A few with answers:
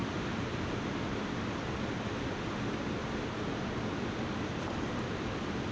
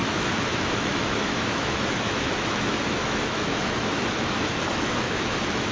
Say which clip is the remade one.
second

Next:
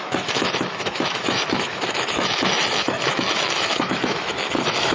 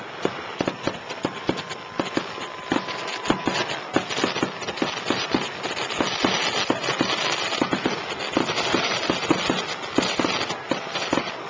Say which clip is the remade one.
first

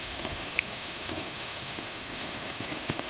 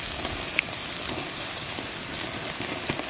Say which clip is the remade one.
first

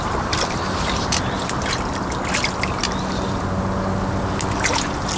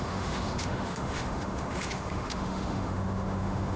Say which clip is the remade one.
second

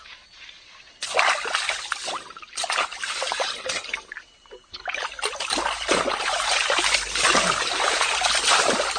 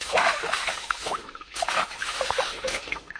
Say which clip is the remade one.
second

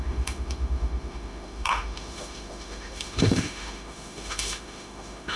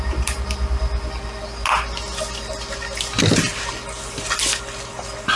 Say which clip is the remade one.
first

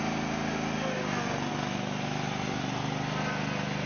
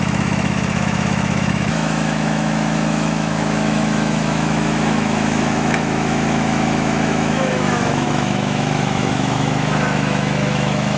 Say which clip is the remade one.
second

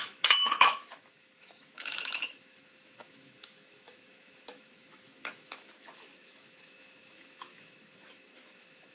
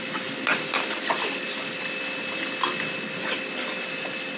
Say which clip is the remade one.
first